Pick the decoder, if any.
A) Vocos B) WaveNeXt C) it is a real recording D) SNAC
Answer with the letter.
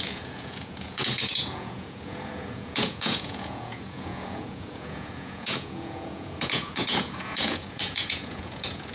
A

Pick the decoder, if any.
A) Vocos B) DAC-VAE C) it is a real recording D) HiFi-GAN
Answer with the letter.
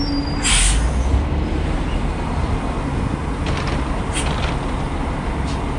C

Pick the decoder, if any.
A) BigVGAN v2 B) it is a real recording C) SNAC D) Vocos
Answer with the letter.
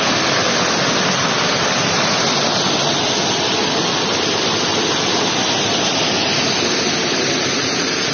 B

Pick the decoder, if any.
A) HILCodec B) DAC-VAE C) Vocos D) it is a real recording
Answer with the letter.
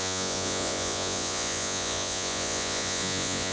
C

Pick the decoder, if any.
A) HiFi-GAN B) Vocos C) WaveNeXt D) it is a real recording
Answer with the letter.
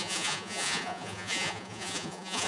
B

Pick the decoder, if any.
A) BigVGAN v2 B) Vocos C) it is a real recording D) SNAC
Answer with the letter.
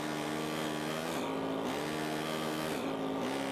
C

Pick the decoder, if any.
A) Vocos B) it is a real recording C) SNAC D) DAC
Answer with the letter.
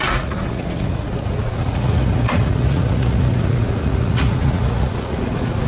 A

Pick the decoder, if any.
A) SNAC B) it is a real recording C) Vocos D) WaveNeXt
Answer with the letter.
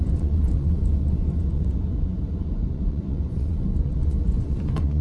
C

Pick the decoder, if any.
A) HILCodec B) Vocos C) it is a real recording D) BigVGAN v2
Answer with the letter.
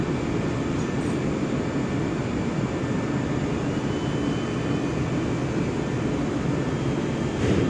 C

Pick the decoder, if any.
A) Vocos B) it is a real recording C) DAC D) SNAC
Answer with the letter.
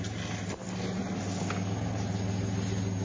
B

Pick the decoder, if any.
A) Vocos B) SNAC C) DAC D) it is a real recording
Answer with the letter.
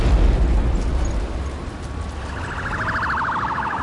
D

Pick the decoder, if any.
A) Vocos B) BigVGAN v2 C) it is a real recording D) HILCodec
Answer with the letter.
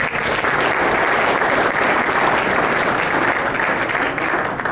C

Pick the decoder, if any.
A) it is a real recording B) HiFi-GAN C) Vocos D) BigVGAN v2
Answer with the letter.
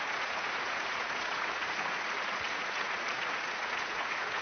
C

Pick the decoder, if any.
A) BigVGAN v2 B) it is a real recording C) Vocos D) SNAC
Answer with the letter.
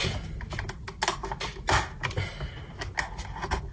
B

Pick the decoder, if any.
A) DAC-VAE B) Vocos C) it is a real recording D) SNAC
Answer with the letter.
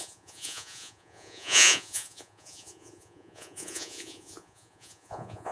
B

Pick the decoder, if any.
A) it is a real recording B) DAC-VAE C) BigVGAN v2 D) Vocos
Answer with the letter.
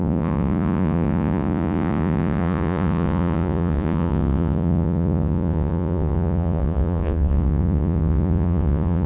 D